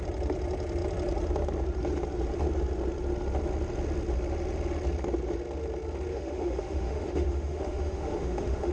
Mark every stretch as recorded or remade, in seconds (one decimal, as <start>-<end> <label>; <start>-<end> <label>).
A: 0.0-6.1 recorded; 6.1-8.7 remade